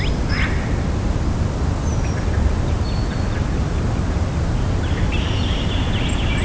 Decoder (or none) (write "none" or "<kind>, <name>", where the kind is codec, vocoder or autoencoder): none